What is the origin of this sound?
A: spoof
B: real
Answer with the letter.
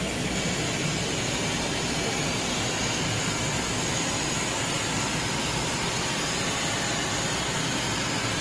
B